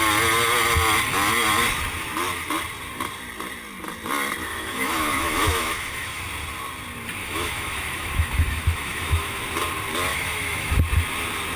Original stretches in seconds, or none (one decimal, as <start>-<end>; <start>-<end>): 0.0-4.5; 6.2-7.2; 9.4-10.1; 10.7-11.6

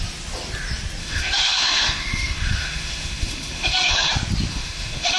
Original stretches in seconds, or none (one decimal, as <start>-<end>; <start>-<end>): 0.0-1.0; 4.1-4.5

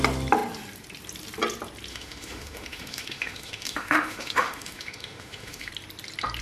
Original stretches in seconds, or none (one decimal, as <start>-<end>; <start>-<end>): 0.0-1.9; 5.7-6.4

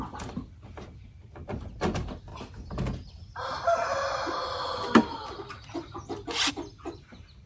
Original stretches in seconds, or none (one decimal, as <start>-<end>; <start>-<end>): 0.0-7.5

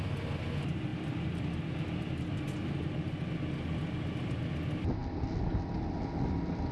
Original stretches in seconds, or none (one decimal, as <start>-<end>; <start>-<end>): 0.0-6.7

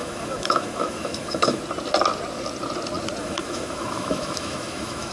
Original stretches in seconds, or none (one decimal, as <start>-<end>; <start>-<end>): 1.6-3.2